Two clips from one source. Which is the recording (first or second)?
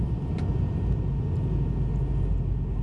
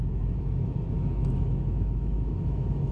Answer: first